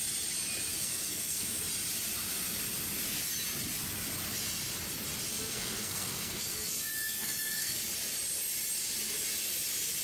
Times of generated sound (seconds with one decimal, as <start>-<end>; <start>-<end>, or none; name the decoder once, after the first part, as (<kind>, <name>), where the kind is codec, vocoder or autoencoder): 0.7-1.6 (codec, SNAC); 5.3-7.8